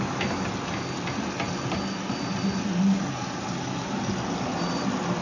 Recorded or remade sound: recorded